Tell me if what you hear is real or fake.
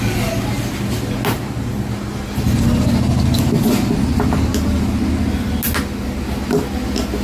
real